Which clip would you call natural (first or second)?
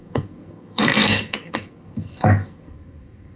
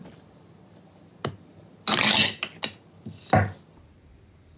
second